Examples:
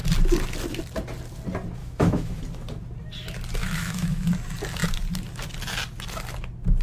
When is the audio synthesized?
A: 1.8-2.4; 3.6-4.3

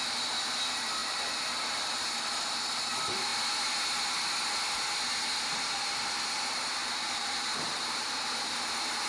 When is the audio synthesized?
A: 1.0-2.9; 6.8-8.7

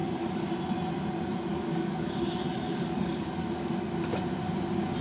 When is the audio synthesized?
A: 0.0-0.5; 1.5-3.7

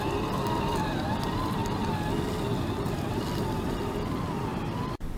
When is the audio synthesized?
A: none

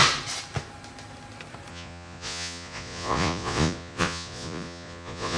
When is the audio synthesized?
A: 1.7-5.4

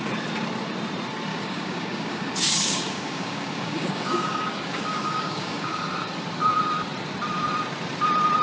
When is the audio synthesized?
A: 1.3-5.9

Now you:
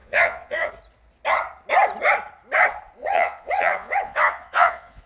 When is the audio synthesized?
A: 0.0-0.7; 3.0-5.1

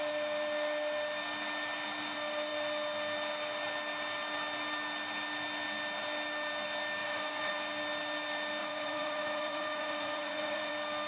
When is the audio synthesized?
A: 7.0-7.5; 8.6-10.7